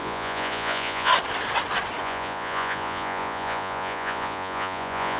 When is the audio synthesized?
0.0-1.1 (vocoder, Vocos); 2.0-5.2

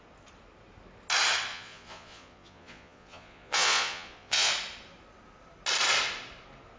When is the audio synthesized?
1.5-4.5 (vocoder, Vocos)

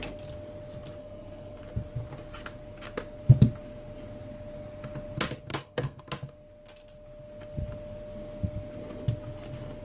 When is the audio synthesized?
1.0-1.6 (codec, SNAC); 5.5-6.0